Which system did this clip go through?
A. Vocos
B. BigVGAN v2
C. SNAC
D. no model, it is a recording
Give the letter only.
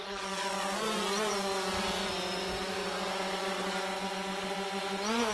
A